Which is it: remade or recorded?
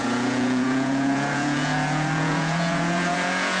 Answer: remade